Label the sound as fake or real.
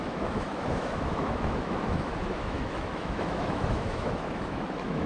fake